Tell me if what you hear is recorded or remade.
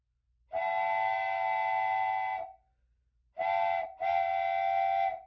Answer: recorded